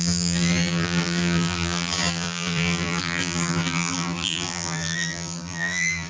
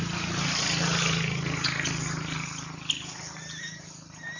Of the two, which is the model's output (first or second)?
first